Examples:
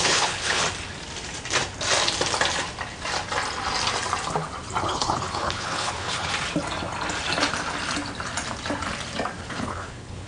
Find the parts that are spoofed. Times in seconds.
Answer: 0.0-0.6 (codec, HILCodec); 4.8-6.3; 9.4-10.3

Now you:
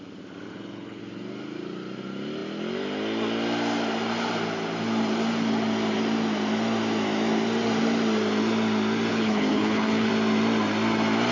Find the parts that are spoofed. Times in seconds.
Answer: 0.5-1.0 (codec, HILCodec); 9.1-10.1

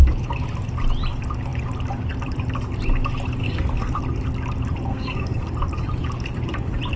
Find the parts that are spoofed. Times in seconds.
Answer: 3.4-4.0 (codec, SNAC); 4.9-5.5